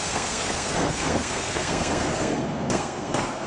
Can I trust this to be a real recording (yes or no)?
no